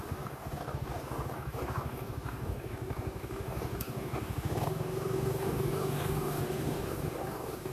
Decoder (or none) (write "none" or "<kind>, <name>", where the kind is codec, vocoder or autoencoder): codec, DAC